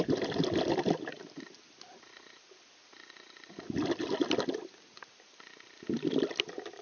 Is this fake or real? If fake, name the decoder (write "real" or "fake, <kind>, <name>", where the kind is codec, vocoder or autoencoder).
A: real